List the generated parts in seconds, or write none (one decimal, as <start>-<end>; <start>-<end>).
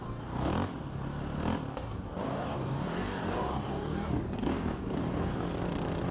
0.0-0.5; 1.7-5.4